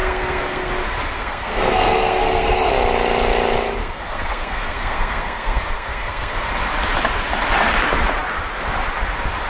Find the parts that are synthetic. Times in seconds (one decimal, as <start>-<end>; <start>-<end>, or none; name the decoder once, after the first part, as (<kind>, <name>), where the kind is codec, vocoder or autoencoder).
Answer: 0.0-0.7 (codec, SNAC); 1.2-2.7; 3.8-6.5